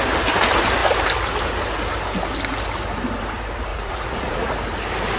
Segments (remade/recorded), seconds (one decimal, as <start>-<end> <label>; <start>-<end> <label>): 0.0-3.7 recorded; 3.7-4.5 remade; 4.5-5.2 recorded

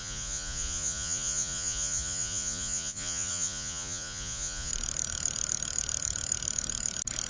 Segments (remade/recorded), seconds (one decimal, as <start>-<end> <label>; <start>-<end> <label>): 0.0-4.7 remade; 4.7-7.3 recorded

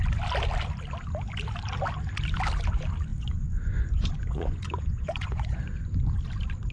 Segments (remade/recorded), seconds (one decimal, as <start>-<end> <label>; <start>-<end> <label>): 0.0-3.1 recorded; 3.1-6.2 remade; 6.2-6.7 recorded

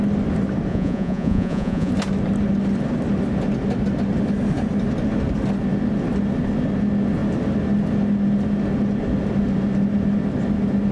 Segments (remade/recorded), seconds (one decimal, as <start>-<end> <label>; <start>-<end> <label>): 0.0-0.7 recorded; 0.7-1.9 remade; 1.9-10.9 recorded

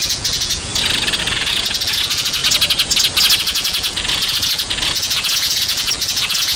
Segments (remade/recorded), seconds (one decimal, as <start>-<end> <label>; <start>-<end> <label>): 0.0-0.7 remade; 0.7-1.2 recorded; 1.2-2.4 remade; 2.4-3.4 recorded; 3.4-6.6 remade

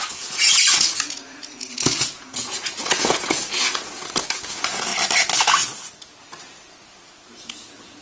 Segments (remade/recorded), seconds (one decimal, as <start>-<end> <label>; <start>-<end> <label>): 0.0-4.9 remade; 4.9-7.4 recorded; 7.4-8.0 remade

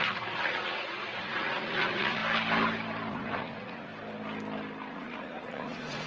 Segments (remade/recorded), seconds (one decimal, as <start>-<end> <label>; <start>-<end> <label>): 0.0-2.2 remade; 2.2-3.1 recorded; 3.1-3.9 remade; 3.9-4.9 recorded; 4.9-6.1 remade